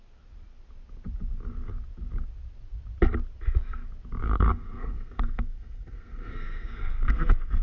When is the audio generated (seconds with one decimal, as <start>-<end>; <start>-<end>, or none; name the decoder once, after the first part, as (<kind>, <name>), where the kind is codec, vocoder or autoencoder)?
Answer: 4.2-7.6 (codec, SNAC)

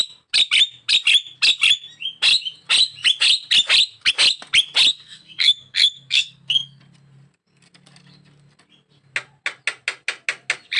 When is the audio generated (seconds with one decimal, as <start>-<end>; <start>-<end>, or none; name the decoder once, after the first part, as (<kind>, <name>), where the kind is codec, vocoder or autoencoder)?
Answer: 4.9-6.8 (codec, SNAC)

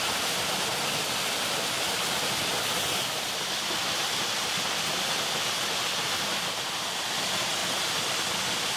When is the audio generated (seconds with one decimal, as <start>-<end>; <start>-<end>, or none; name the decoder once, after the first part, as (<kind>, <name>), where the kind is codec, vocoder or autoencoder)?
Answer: none